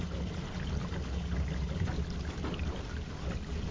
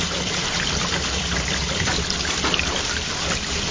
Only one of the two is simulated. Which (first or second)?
second